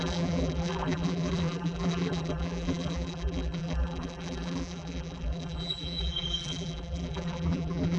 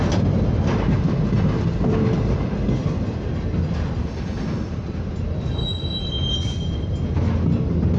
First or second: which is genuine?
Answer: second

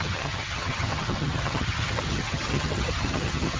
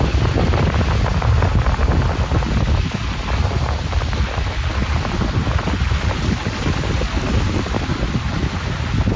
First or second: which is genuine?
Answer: second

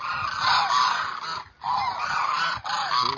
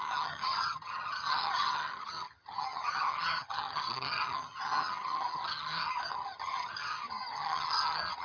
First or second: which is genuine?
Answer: first